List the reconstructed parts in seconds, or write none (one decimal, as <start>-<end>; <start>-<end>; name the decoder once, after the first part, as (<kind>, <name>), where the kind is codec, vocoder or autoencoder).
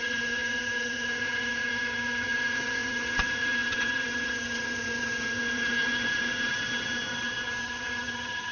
0.0-8.5 (vocoder, HiFi-GAN)